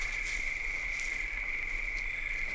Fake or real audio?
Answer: real